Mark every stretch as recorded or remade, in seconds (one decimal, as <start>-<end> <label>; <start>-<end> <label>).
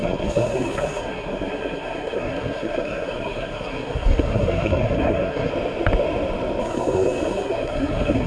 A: 0.0-5.5 remade; 5.5-6.6 recorded; 6.6-8.3 remade